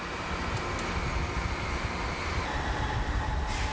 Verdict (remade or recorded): recorded